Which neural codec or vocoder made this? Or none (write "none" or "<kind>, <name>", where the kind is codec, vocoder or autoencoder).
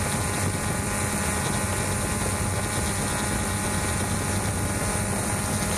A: none